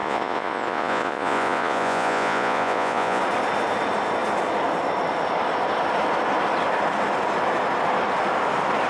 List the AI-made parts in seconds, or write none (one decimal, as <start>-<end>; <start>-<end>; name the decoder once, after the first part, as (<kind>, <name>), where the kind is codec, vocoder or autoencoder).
0.0-3.2 (vocoder, Vocos)